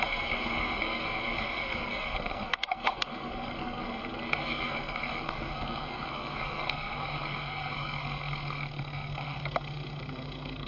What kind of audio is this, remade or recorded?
remade